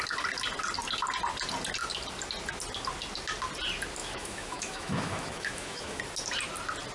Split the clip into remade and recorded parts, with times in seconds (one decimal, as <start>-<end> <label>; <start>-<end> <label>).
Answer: 0.0-4.0 recorded; 4.0-6.0 remade; 6.0-6.9 recorded